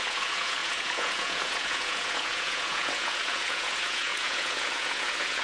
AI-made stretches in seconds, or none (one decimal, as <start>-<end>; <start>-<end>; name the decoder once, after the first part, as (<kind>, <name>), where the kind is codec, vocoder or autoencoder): 0.0-5.4 (vocoder, Vocos)